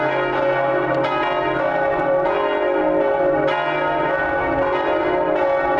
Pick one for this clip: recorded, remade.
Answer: recorded